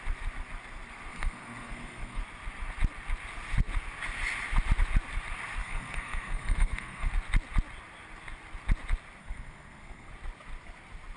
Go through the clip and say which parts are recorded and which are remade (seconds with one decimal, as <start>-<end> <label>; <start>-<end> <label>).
0.0-1.1 recorded; 1.1-2.2 remade; 2.2-5.6 recorded; 5.6-7.1 remade; 7.1-9.2 recorded; 9.2-10.1 remade; 10.1-11.2 recorded